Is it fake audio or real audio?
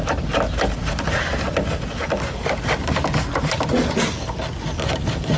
real